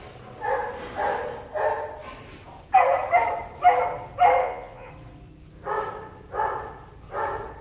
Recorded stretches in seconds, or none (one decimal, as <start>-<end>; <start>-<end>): 0.0-4.4; 4.9-7.6